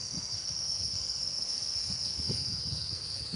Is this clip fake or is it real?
fake